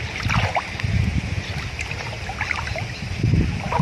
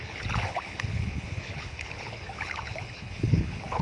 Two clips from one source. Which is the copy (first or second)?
second